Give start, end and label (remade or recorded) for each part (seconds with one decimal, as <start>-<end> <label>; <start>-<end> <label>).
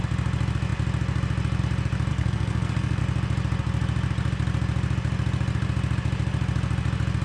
0.0-2.1 recorded; 2.1-3.0 remade; 3.0-7.2 recorded